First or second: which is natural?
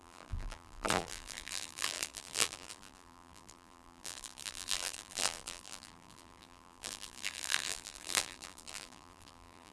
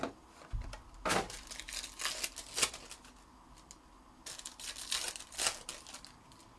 second